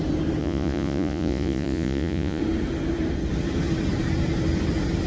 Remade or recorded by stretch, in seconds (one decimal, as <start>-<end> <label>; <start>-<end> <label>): 0.0-0.4 recorded; 0.4-2.4 remade; 2.4-5.1 recorded